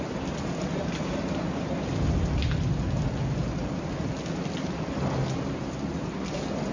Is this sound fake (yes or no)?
no